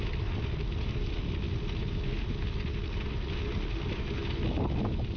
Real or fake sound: real